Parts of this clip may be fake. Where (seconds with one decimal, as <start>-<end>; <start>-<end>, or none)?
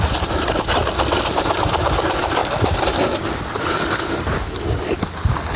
none